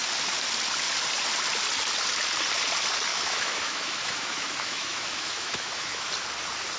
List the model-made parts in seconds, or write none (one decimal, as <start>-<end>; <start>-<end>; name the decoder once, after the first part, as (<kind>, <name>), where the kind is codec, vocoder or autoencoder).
3.1-6.1 (autoencoder, DAC-VAE)

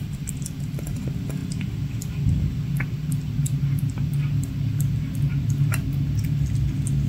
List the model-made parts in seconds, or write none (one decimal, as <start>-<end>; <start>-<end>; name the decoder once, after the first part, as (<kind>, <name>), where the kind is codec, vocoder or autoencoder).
none